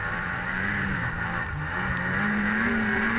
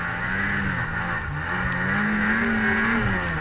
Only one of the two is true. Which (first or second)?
second